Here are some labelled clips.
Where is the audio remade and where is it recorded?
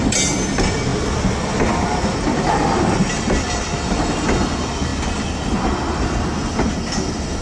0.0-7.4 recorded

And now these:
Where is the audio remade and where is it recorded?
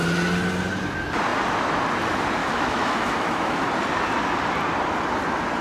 0.0-2.4 recorded; 2.4-3.7 remade; 3.7-5.6 recorded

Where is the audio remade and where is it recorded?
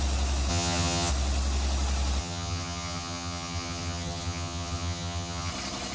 0.0-0.5 recorded; 0.5-1.1 remade; 1.1-2.2 recorded; 2.2-5.5 remade; 5.5-5.9 recorded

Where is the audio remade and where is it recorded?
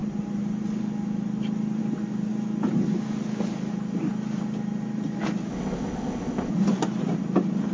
0.0-5.5 recorded; 5.5-6.5 remade; 6.5-7.7 recorded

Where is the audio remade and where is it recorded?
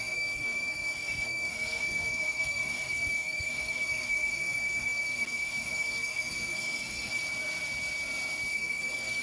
0.0-7.2 remade; 7.2-8.5 recorded; 8.5-9.2 remade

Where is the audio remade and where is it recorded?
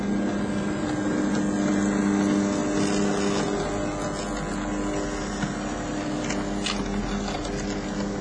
0.0-8.2 recorded